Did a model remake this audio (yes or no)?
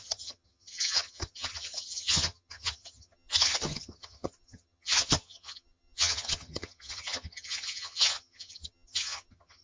yes